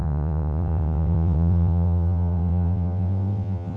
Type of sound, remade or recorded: remade